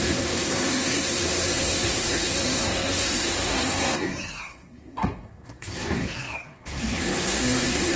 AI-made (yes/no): yes